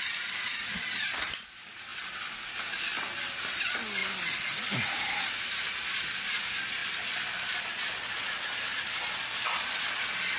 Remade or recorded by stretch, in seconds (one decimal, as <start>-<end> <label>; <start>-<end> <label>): 0.0-4.0 recorded; 4.0-5.4 remade; 5.4-6.8 recorded; 6.8-7.6 remade; 7.6-10.4 recorded